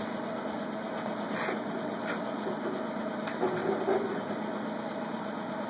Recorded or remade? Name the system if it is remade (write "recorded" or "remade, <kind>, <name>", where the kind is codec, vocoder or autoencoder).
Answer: remade, vocoder, BigVGAN v2